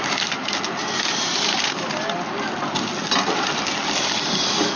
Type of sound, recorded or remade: recorded